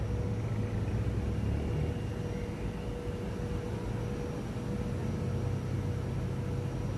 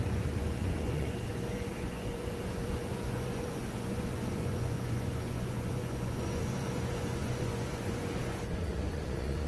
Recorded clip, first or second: first